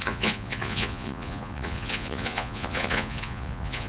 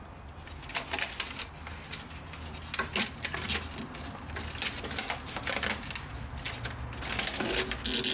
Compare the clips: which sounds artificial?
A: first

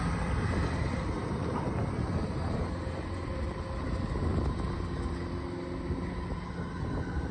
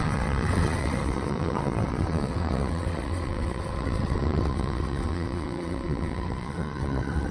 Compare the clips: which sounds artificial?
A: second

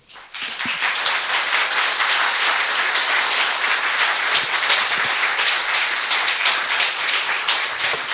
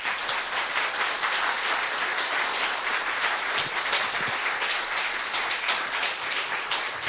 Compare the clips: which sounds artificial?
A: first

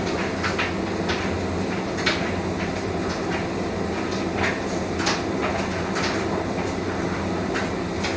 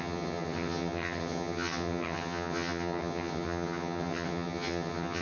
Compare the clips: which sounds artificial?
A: second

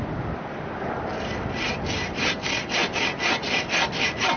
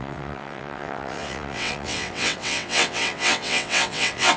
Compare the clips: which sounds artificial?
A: second